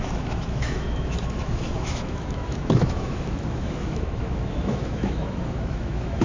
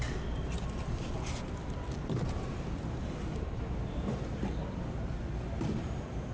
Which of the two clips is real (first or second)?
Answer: second